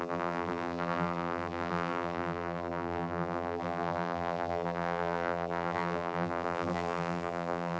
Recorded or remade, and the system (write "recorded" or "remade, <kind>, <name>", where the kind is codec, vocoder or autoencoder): remade, vocoder, BigVGAN v2